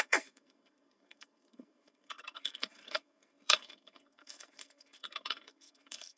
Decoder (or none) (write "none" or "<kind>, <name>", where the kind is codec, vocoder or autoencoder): codec, SNAC